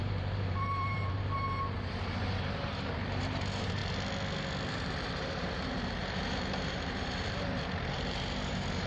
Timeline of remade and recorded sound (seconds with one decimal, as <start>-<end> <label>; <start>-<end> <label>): 0.0-3.8 remade; 3.8-4.7 recorded; 4.7-8.9 remade